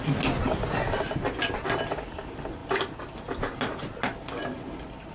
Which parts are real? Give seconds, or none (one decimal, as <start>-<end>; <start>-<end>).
0.0-5.1